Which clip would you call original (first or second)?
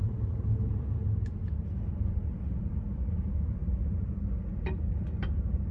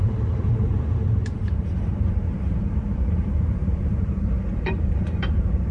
first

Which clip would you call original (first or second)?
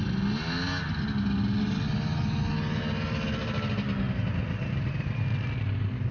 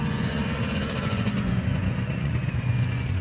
first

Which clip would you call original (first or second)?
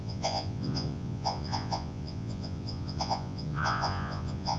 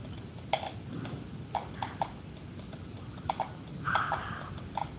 second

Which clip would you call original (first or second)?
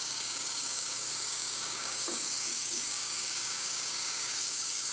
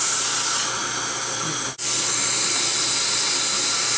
second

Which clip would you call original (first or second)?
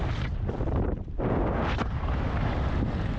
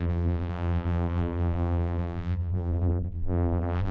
first